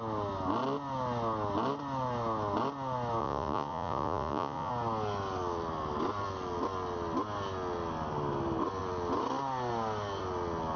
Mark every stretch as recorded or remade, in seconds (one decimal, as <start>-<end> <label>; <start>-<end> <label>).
0.0-3.2 recorded; 3.2-4.7 remade; 4.7-10.8 recorded